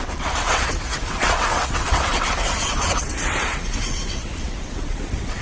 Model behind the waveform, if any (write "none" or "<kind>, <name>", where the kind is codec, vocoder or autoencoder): vocoder, WaveNeXt